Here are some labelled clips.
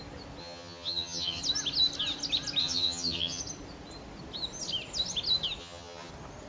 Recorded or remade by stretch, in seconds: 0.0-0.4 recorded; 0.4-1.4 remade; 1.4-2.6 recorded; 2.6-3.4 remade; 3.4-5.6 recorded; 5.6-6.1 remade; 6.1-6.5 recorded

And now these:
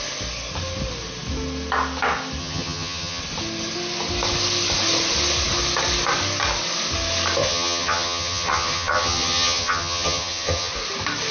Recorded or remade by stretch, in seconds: 0.0-2.4 recorded; 2.4-3.2 remade; 3.2-7.4 recorded; 7.4-10.7 remade; 10.7-11.3 recorded

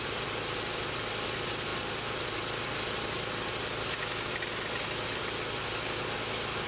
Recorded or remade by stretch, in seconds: 0.0-6.7 recorded